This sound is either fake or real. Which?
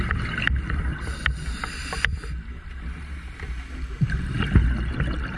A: real